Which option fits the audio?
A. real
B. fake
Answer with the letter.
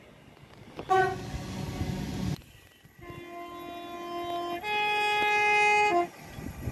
A